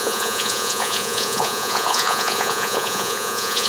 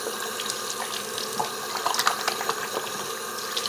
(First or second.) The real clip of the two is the second